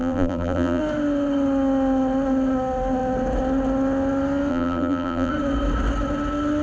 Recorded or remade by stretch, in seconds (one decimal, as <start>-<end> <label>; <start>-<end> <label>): 0.0-0.8 remade; 0.8-4.5 recorded; 4.5-5.3 remade; 5.3-6.6 recorded